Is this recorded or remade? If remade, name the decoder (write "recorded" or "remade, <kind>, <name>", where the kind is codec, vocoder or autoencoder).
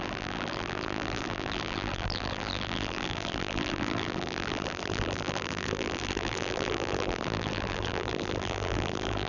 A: remade, vocoder, BigVGAN v2